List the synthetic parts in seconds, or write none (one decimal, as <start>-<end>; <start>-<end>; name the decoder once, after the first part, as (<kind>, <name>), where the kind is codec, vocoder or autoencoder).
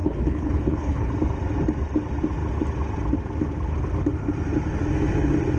0.0-1.1 (codec, HILCodec)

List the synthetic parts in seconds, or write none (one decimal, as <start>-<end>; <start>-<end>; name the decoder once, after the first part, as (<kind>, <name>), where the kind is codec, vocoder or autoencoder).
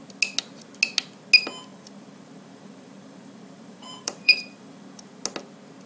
1.7-5.2 (vocoder, BigVGAN v2)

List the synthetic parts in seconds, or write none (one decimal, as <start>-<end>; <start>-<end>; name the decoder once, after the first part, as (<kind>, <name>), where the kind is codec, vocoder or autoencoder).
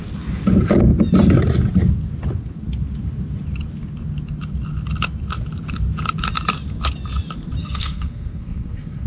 7.6-9.1 (codec, SNAC)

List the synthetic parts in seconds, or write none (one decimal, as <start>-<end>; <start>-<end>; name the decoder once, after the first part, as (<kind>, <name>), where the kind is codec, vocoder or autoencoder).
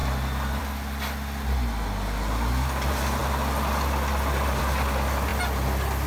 none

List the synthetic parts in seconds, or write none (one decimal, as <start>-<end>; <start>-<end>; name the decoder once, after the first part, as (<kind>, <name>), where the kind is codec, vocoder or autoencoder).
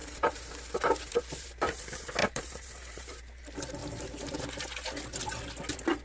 0.0-0.5 (vocoder, BigVGAN v2); 2.2-3.0; 3.8-4.4